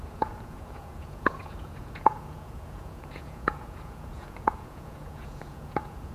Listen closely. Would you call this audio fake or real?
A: fake